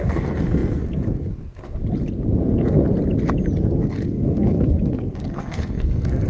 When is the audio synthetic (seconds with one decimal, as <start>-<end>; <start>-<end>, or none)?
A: 0.0-1.8; 2.4-2.9; 3.6-6.3